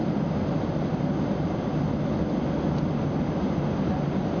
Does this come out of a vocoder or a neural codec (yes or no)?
no